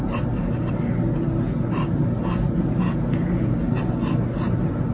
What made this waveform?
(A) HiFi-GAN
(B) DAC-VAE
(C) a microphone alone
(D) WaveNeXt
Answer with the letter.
C